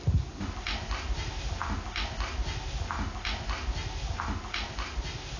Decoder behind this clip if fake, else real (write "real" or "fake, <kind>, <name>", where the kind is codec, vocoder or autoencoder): real